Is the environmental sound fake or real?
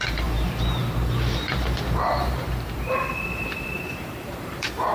fake